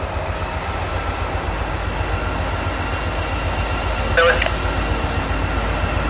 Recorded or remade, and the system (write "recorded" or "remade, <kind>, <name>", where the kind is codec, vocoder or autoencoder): recorded